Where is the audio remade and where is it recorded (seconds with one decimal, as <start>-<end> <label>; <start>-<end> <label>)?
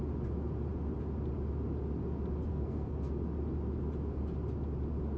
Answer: 0.0-2.5 recorded; 2.5-3.1 remade; 3.1-5.2 recorded